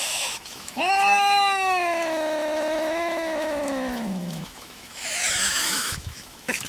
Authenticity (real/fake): fake